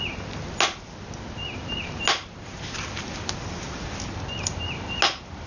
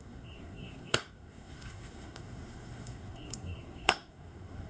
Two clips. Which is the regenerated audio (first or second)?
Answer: second